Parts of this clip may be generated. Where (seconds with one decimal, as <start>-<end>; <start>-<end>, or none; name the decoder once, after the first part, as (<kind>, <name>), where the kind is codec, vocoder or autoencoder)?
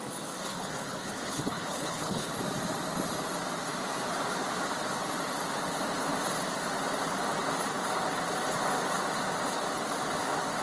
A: 0.4-2.3 (codec, HILCodec)